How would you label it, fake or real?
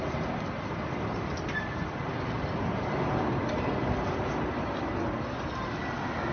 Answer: real